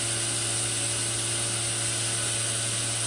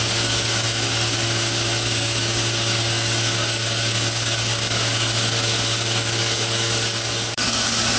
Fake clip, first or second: second